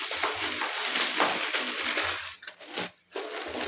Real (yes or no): yes